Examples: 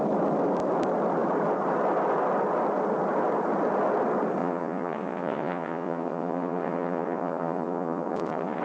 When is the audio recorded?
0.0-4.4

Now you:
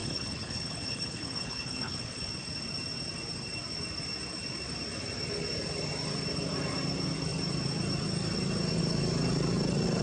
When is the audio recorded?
2.3-10.0

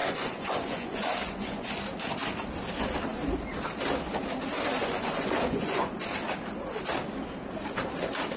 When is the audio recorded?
1.8-4.8; 5.9-8.4